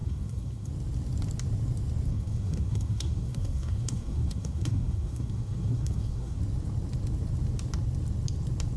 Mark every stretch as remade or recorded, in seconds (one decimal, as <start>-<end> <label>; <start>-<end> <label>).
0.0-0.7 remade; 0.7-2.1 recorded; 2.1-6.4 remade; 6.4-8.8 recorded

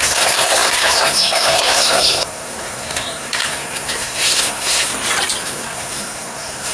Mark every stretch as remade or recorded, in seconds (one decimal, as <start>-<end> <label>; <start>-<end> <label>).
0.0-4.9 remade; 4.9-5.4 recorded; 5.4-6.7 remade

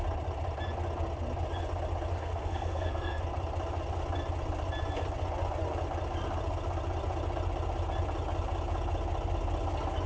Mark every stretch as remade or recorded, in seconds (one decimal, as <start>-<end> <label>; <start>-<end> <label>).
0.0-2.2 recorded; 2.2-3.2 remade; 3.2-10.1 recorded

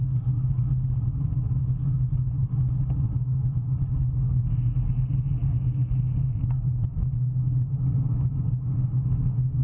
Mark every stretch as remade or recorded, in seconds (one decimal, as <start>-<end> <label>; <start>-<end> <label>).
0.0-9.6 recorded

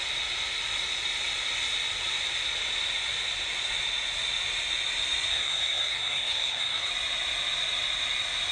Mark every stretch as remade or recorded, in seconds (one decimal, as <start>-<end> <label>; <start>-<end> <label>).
0.0-5.3 recorded; 5.3-6.9 remade; 6.9-8.5 recorded